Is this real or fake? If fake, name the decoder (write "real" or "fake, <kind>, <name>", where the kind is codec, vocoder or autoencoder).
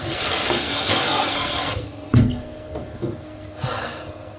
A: fake, codec, SNAC